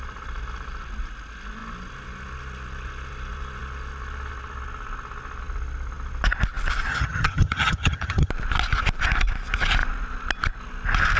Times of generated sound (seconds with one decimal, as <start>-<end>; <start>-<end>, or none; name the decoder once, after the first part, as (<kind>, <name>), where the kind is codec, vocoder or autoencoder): 6.9-8.3 (vocoder, HiFi-GAN)